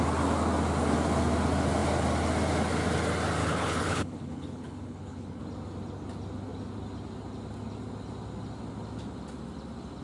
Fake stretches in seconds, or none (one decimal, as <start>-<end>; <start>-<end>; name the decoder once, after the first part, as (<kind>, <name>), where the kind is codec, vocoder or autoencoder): 3.4-5.4 (codec, HILCodec)